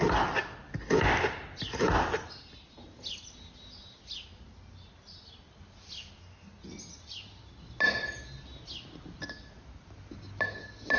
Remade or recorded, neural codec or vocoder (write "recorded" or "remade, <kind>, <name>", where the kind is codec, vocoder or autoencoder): recorded